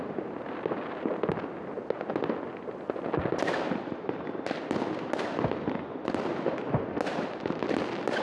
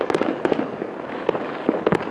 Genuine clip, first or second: first